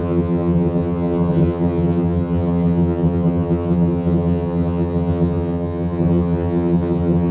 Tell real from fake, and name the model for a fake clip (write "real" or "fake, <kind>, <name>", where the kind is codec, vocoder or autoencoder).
fake, vocoder, HiFi-GAN